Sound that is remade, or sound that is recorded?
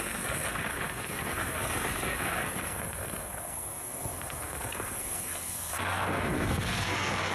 remade